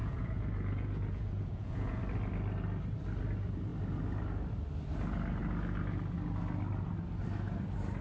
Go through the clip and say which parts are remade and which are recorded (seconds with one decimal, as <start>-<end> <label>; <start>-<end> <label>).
0.0-2.0 remade; 2.0-8.0 recorded